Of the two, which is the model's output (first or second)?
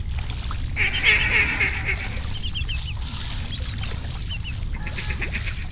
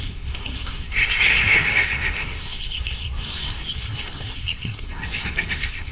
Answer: second